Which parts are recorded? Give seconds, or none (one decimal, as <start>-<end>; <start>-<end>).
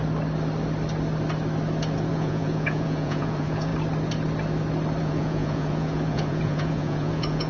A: 0.0-2.1; 3.7-5.0